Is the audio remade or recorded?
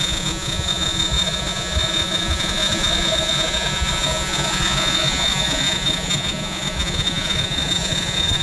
remade